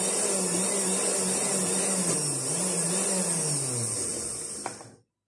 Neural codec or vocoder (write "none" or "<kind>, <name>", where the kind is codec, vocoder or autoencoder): none